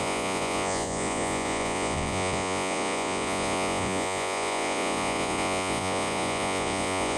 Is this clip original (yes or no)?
no